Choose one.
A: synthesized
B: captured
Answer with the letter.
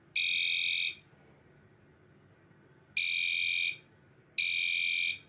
B